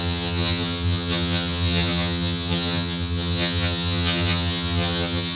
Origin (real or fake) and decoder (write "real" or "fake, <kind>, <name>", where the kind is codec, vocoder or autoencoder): fake, vocoder, HiFi-GAN